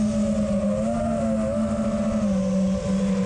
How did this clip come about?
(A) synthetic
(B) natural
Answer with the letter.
B